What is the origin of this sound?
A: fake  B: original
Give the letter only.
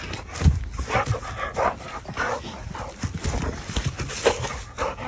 B